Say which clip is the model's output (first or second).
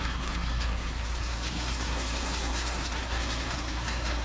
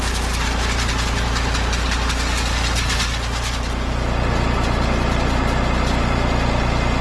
first